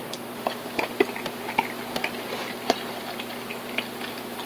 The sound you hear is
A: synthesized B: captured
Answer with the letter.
B